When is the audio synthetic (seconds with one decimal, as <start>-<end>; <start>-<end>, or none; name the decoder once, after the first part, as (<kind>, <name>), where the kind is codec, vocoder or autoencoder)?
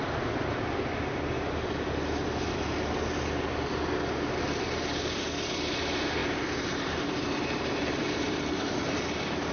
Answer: 6.2-8.5 (vocoder, BigVGAN v2)